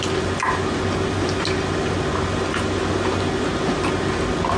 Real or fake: real